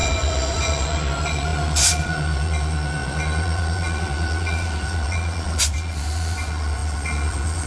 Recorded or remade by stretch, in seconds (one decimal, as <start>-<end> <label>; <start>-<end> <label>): 0.0-7.7 remade